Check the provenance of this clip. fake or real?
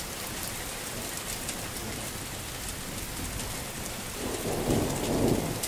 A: real